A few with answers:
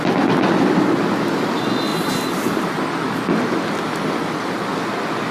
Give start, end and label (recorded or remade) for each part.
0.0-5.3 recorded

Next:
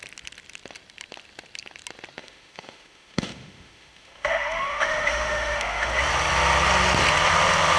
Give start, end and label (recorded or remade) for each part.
0.0-2.2 recorded; 2.2-6.0 remade; 6.0-7.8 recorded